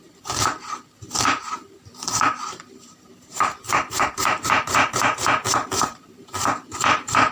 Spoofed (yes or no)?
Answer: yes